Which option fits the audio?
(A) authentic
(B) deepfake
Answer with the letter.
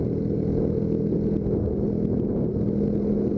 A